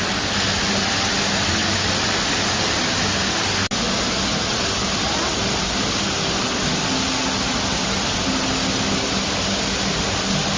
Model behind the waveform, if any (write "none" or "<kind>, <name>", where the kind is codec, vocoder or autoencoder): none